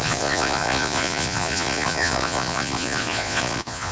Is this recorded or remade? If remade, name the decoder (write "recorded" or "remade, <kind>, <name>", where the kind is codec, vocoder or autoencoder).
remade, vocoder, Vocos